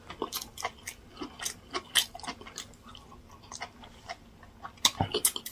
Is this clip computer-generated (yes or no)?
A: no